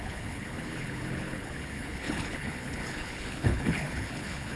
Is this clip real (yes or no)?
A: no